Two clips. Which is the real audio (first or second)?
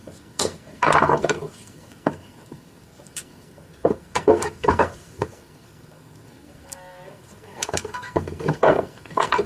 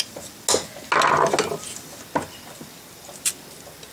second